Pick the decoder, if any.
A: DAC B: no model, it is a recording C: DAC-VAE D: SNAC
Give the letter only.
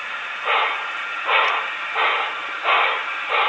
B